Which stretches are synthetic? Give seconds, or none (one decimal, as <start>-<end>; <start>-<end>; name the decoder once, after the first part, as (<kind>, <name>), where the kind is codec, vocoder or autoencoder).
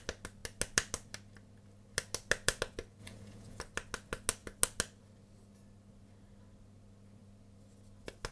3.0-3.6 (vocoder, Vocos)